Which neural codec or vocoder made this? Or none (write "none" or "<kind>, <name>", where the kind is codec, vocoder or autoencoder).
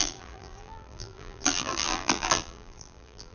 vocoder, BigVGAN v2